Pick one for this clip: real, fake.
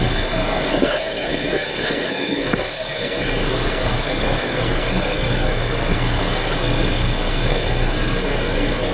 fake